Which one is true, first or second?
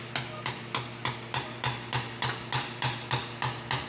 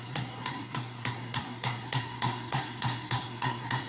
first